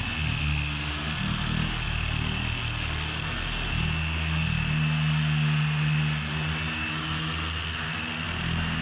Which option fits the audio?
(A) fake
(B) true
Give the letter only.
B